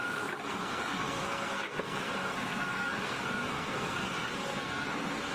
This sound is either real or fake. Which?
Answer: fake